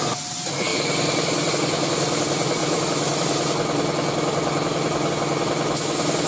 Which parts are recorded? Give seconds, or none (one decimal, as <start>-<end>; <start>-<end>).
0.0-6.3